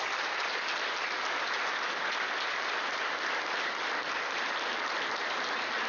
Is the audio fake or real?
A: real